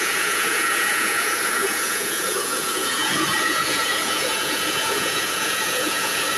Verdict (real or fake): fake